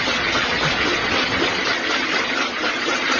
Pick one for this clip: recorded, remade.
recorded